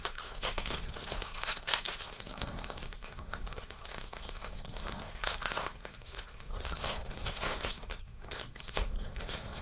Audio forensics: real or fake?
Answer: fake